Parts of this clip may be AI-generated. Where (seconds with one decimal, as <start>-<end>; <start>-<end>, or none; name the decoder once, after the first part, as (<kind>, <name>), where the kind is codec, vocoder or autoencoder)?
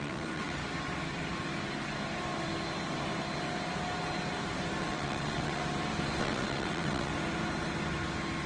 0.0-0.6 (vocoder, WaveNeXt); 4.8-5.6; 6.2-7.1